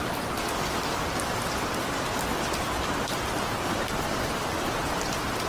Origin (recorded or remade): recorded